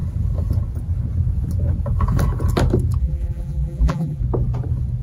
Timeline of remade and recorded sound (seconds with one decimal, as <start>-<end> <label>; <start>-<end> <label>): 0.0-3.0 recorded; 3.0-4.2 remade; 4.2-5.0 recorded